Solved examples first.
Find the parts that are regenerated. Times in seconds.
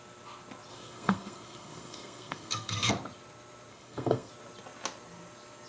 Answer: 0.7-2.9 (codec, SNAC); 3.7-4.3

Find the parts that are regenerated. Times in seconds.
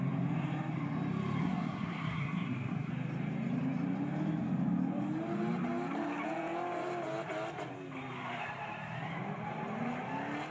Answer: 1.4-2.9 (codec, SNAC)